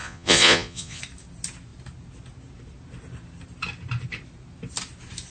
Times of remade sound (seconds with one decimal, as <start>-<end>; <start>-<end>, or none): 0.0-1.0